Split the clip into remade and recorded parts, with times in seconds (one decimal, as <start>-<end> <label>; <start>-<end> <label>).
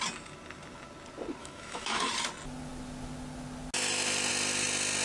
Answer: 0.0-1.4 recorded; 1.4-2.1 remade; 2.1-5.0 recorded